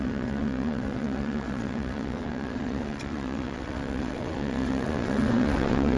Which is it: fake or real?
fake